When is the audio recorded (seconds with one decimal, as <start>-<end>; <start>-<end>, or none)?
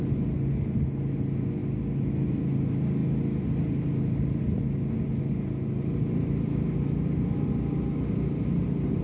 0.0-9.0